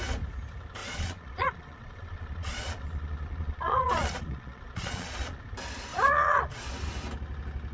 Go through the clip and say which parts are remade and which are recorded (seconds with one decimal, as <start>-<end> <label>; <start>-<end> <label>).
0.0-0.8 recorded; 0.8-5.4 remade; 5.4-5.9 recorded; 5.9-6.7 remade; 6.7-7.7 recorded